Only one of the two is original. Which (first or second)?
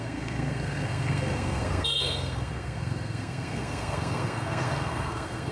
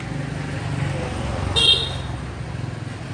second